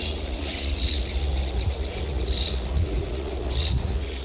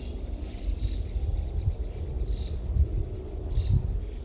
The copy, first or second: first